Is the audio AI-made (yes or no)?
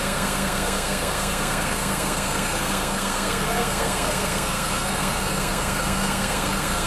yes